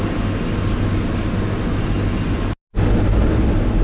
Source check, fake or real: real